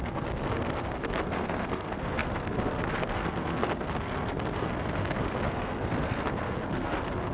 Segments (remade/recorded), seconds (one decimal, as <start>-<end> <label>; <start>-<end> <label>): 0.0-7.3 remade